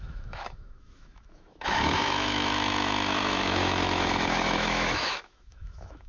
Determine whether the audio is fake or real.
fake